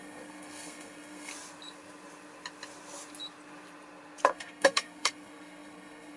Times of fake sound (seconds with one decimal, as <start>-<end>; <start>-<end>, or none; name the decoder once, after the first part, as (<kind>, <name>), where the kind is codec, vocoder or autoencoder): 0.0-1.3 (codec, SNAC); 4.3-6.2